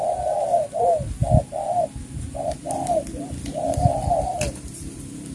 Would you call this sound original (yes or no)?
yes